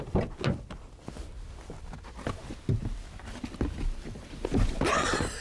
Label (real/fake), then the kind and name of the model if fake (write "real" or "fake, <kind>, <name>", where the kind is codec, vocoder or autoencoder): real